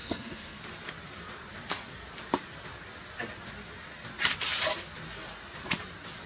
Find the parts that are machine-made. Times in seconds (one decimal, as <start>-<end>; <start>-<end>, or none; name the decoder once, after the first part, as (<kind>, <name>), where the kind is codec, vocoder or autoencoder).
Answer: 0.0-0.6 (codec, SNAC)